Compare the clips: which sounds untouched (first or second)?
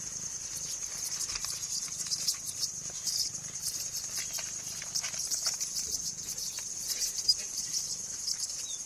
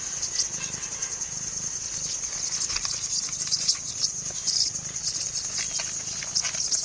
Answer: second